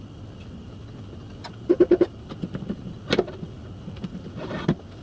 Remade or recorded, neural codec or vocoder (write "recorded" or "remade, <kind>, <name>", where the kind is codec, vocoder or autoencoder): recorded